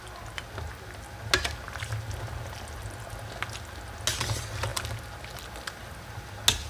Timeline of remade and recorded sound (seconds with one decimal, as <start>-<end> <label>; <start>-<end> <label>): 0.0-6.7 recorded

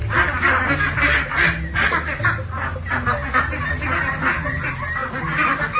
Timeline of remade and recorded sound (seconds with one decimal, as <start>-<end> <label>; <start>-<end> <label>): 0.0-5.8 recorded

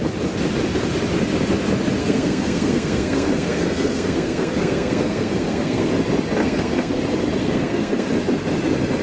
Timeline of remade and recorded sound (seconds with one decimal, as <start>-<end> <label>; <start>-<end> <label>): 0.0-2.0 recorded; 2.0-5.9 remade; 5.9-6.4 recorded; 6.4-7.0 remade; 7.0-7.4 recorded; 7.4-8.1 remade; 8.1-9.0 recorded

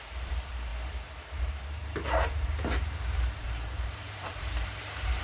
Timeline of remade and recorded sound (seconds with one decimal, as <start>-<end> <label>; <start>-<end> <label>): 0.0-0.7 remade; 0.7-1.4 recorded; 1.4-5.2 remade

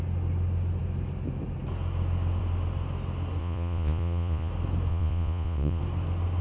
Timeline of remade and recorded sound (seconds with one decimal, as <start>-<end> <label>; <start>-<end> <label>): 0.0-3.4 recorded; 3.4-4.5 remade; 4.5-4.9 recorded; 4.9-5.8 remade; 5.8-6.4 recorded